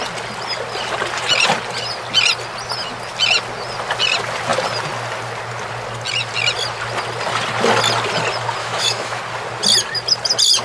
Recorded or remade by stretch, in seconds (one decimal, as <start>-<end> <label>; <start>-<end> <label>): 0.0-8.6 recorded; 8.6-9.2 remade; 9.2-10.6 recorded